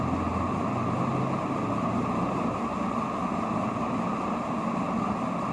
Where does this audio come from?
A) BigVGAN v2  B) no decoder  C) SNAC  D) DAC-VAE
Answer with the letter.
B